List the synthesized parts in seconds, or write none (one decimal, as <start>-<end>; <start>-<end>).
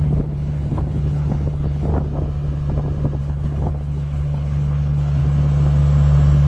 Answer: 0.0-1.9; 3.2-5.2